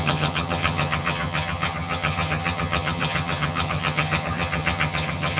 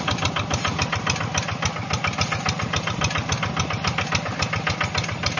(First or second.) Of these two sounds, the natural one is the second